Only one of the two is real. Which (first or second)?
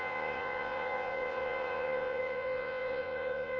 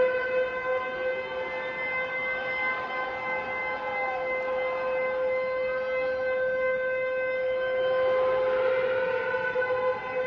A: second